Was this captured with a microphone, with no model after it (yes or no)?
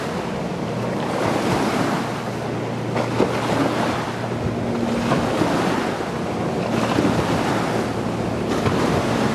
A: yes